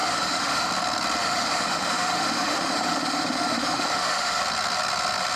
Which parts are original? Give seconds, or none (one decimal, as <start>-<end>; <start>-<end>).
0.7-1.2; 4.4-5.4